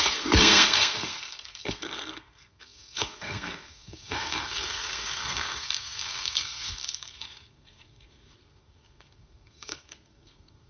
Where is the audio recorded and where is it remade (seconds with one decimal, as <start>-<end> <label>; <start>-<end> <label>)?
0.0-10.7 remade